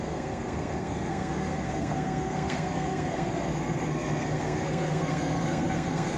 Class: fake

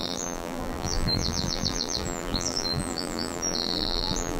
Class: fake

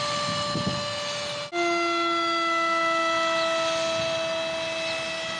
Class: real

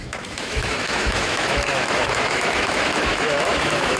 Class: fake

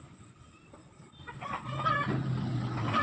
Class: real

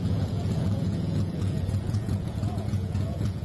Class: fake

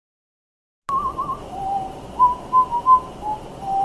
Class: real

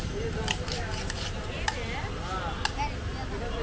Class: real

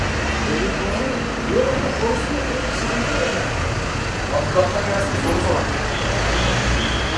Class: real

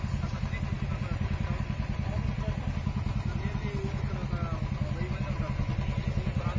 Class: real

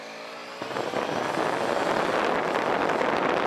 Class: real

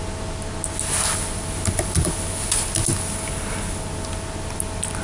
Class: real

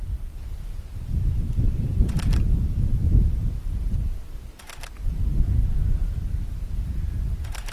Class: fake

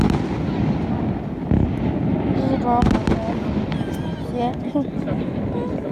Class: real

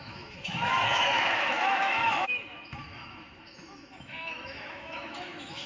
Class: fake